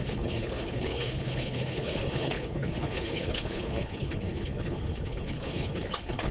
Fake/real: fake